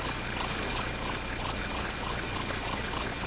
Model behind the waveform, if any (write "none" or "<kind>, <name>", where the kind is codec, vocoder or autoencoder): none